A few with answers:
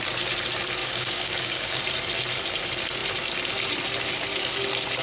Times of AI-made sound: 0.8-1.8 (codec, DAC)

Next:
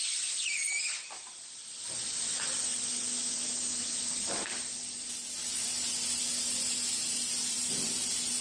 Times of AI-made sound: 3.1-4.3 (autoencoder, DAC-VAE)

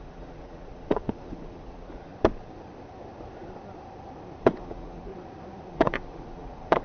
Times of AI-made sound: 0.0-2.1 (vocoder, Vocos); 4.4-5.1; 5.7-6.8

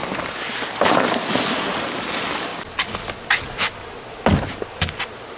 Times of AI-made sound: 1.3-2.5 (vocoder, BigVGAN v2)